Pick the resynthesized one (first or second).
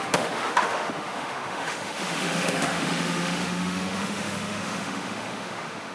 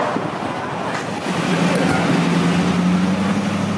first